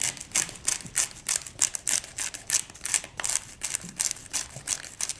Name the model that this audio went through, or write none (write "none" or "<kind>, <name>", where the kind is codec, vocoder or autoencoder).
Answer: none